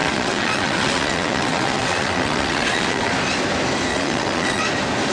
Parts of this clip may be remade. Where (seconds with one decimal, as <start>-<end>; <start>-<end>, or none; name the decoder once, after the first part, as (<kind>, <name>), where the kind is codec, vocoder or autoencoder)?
0.0-3.1 (vocoder, WaveNeXt); 3.9-4.6